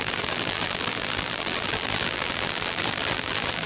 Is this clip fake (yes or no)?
yes